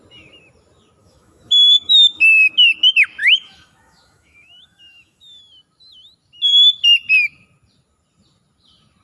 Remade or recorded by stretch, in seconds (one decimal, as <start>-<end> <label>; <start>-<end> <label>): 0.0-1.0 recorded; 1.0-2.5 remade; 2.5-3.2 recorded; 3.2-5.4 remade; 5.4-9.0 recorded